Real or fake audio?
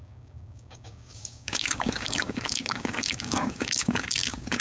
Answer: fake